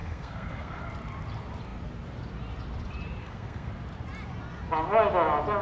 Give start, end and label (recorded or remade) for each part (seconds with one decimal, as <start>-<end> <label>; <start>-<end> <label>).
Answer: 0.0-0.8 remade; 0.8-3.2 recorded; 3.2-3.7 remade; 3.7-5.6 recorded